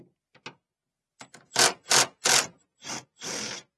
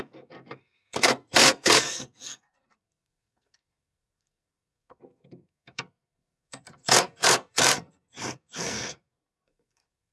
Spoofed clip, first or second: second